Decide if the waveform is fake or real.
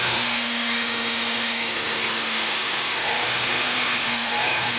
fake